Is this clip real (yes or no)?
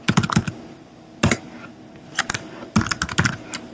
yes